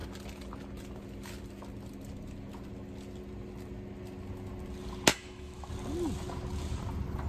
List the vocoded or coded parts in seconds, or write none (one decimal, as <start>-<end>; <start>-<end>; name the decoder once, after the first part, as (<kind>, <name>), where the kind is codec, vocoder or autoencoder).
5.1-5.7 (autoencoder, DAC-VAE)